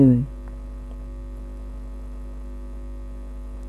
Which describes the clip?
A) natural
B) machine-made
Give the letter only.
A